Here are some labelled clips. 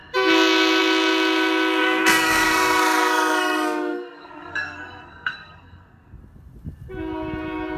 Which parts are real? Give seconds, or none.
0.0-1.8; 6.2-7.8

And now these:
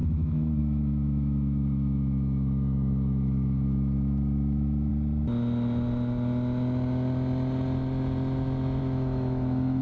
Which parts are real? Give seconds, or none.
4.9-8.8

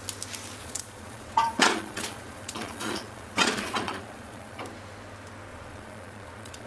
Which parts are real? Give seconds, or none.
0.0-0.6; 4.6-5.5

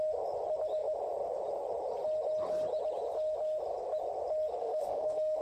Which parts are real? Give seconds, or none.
0.0-4.6

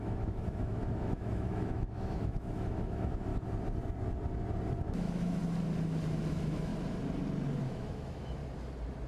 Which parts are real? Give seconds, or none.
3.3-4.8; 5.4-6.3; 6.7-7.6; 8.4-9.1